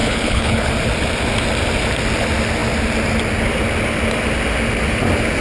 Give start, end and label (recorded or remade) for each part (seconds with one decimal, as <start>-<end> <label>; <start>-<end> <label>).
0.0-0.7 remade; 0.7-5.4 recorded